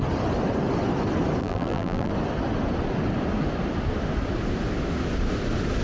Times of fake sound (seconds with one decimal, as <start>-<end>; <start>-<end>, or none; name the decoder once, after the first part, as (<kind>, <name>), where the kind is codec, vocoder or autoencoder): 1.4-2.1 (vocoder, BigVGAN v2)